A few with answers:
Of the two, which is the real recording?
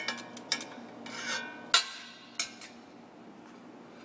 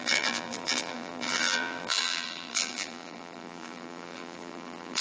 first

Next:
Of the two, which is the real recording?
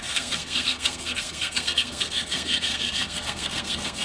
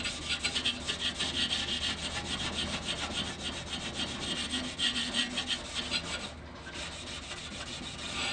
second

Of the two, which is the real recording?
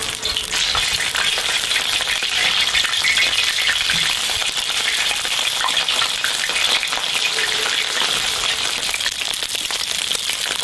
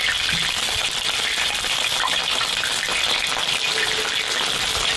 second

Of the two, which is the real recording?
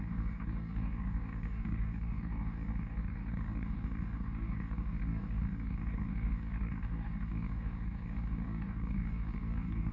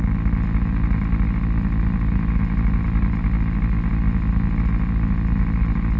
second